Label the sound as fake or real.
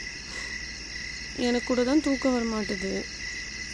real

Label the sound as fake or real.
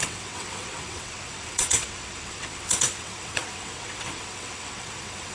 fake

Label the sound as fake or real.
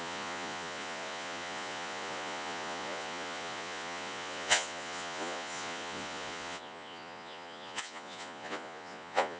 fake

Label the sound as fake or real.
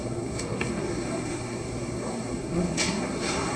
fake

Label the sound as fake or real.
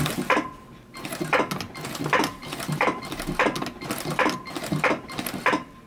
real